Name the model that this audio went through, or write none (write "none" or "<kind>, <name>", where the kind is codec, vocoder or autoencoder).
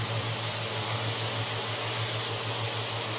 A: none